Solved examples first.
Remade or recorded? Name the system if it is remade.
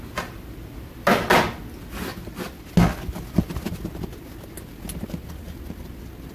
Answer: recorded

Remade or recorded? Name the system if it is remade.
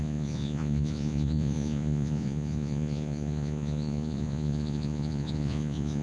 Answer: remade, vocoder, Vocos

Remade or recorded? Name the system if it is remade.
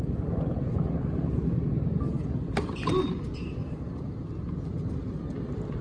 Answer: recorded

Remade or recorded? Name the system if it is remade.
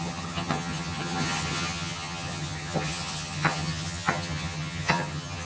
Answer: remade, vocoder, HiFi-GAN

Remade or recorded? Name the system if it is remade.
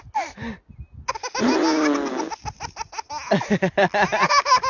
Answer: recorded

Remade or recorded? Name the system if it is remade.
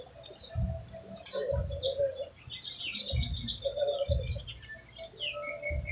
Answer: recorded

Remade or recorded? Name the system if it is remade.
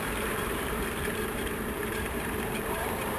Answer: remade, vocoder, BigVGAN v2